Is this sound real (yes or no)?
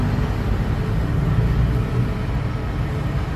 yes